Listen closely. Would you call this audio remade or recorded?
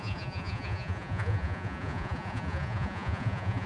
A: remade